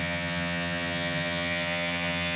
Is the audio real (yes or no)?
no